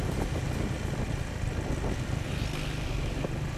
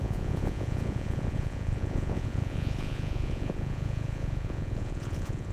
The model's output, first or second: second